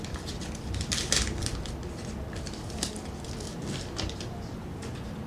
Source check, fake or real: real